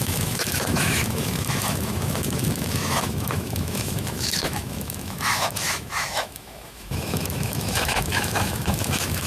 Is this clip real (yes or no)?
no